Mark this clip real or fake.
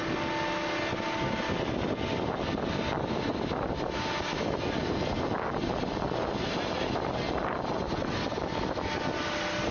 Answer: real